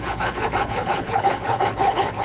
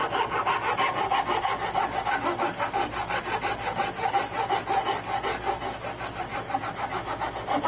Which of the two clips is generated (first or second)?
first